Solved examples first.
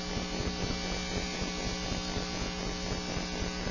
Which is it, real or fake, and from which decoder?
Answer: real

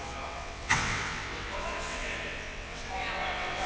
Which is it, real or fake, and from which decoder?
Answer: fake, vocoder, WaveNeXt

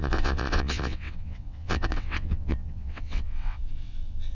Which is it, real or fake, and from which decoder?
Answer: fake, vocoder, WaveNeXt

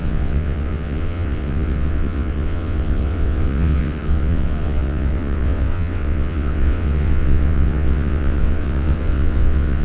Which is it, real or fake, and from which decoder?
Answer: fake, vocoder, WaveNeXt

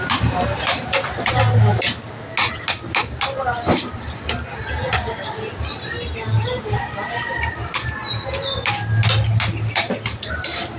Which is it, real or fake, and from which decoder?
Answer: real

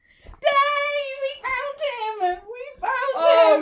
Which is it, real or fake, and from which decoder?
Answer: real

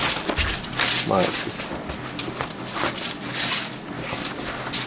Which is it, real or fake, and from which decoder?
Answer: real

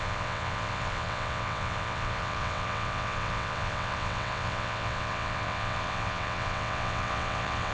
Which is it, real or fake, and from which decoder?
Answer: fake, vocoder, WaveNeXt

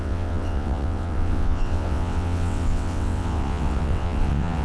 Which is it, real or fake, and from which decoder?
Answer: fake, vocoder, WaveNeXt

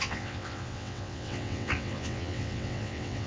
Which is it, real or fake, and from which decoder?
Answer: fake, vocoder, WaveNeXt